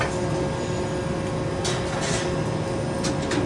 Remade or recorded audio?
recorded